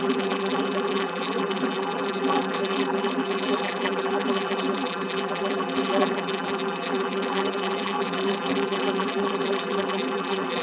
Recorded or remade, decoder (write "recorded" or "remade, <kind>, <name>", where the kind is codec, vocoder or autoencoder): remade, vocoder, BigVGAN v2